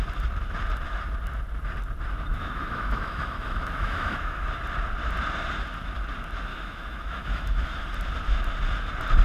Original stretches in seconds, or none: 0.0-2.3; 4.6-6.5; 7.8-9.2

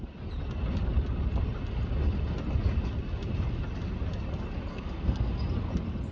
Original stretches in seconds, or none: 0.0-4.7; 5.3-6.1